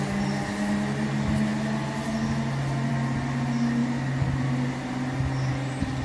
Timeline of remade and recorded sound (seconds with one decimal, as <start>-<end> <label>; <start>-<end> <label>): 0.0-6.0 recorded